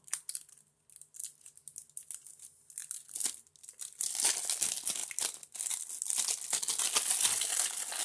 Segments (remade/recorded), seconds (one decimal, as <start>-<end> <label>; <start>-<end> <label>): 0.0-8.0 recorded